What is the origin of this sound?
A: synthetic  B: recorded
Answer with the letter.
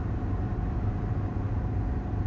B